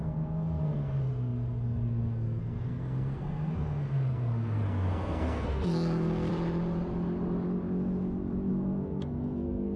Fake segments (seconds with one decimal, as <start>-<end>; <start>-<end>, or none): 0.0-6.3; 8.5-9.8